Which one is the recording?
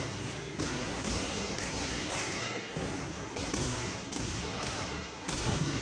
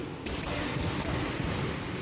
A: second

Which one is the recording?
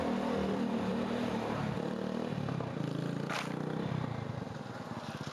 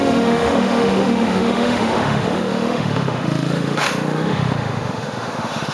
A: first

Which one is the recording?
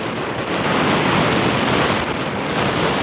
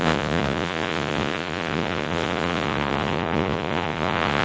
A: first